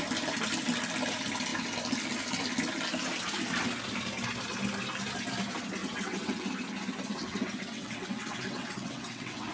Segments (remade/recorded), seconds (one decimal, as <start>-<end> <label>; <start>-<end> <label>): 0.0-5.8 recorded; 5.8-6.5 remade; 6.5-7.1 recorded; 7.1-9.5 remade